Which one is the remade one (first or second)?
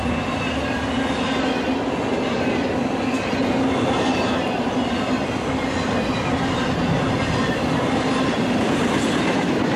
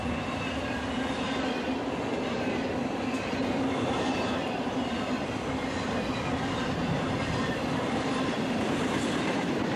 second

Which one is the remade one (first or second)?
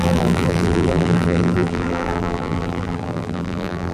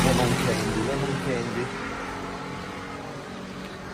first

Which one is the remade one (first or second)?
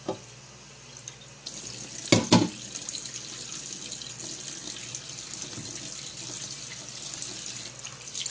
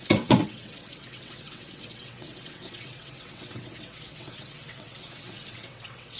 second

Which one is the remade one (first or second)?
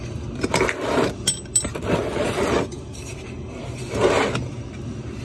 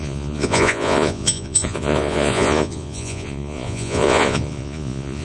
second